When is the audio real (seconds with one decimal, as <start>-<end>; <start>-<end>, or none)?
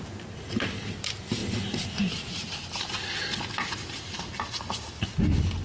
0.0-2.4; 4.9-5.6